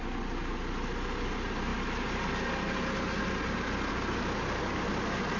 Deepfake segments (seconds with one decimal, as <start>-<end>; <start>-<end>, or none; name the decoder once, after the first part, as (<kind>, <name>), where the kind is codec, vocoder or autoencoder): none